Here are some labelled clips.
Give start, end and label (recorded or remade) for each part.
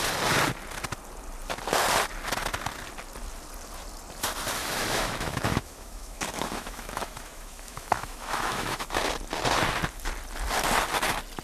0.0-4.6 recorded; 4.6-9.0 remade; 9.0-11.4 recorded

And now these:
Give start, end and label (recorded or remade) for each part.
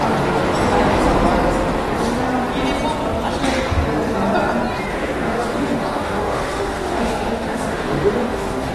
0.0-4.9 recorded; 4.9-8.7 remade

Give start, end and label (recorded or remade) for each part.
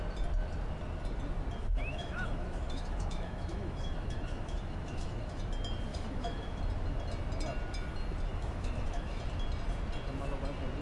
0.0-1.6 recorded; 1.6-5.4 remade; 5.4-5.9 recorded; 5.9-6.6 remade; 6.6-8.3 recorded; 8.3-9.2 remade; 9.2-10.8 recorded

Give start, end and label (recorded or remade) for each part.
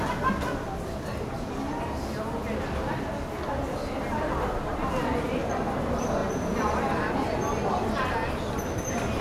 0.0-9.2 recorded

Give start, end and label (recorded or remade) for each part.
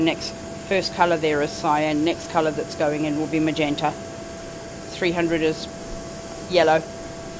0.0-1.5 recorded; 1.5-2.2 remade; 2.2-5.8 recorded; 5.8-6.5 remade; 6.5-7.4 recorded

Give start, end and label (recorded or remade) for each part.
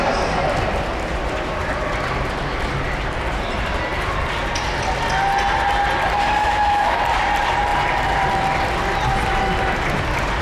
0.0-6.2 recorded; 6.2-7.0 remade; 7.0-10.4 recorded